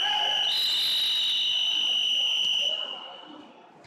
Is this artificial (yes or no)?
no